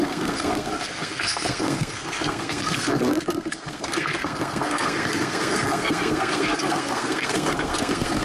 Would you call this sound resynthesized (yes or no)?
yes